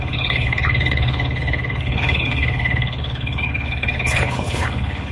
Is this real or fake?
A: fake